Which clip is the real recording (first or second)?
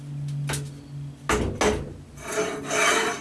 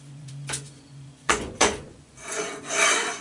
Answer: first